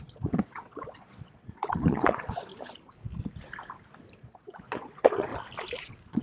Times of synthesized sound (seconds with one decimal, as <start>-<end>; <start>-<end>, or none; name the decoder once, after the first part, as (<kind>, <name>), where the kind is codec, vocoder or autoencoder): 0.0-2.5 (vocoder, Vocos); 4.2-5.3; 5.8-6.2